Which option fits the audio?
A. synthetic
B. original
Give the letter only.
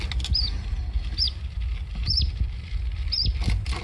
B